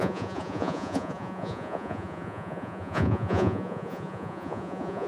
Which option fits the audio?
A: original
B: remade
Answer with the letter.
B